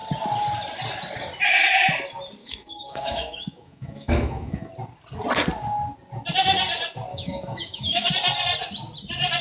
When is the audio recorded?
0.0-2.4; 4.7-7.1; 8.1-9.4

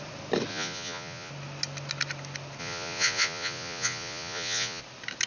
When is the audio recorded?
0.0-0.5; 1.3-2.6; 4.8-5.3

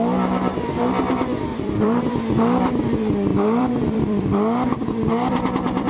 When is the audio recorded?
0.0-1.5; 2.0-3.3; 4.2-4.7

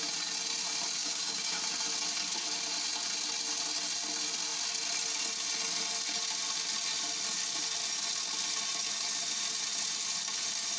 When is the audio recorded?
0.0-1.0; 1.6-10.8

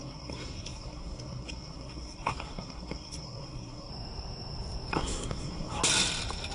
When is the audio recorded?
3.9-4.9; 5.8-6.5